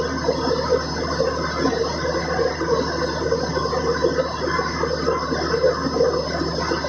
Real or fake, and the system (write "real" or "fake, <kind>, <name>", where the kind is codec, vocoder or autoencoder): real